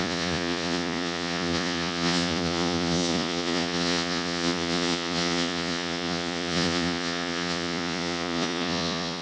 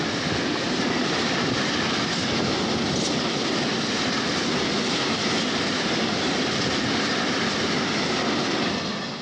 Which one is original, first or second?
second